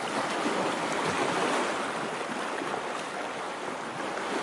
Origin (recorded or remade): recorded